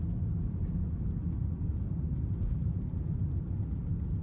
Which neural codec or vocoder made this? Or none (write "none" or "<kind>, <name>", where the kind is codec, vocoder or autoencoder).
none